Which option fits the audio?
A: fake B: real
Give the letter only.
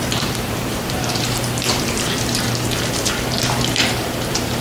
A